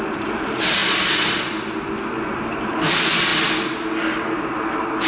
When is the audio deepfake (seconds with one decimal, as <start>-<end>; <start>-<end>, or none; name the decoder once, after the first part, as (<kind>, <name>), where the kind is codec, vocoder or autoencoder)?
none